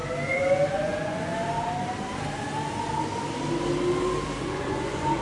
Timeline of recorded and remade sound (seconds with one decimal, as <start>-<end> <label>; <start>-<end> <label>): 0.0-0.7 recorded; 0.7-1.3 remade; 1.3-4.4 recorded; 4.4-5.2 remade